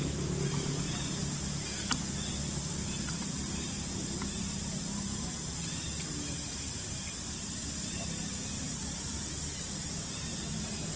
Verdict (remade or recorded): recorded